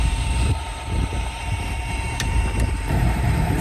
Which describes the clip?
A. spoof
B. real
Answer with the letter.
A